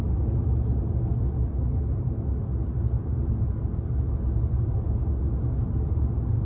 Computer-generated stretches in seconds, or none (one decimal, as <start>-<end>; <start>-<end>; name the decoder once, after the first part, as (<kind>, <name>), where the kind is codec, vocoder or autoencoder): none